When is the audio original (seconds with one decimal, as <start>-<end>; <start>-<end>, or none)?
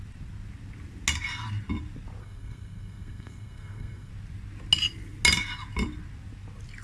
0.0-2.2; 4.1-6.8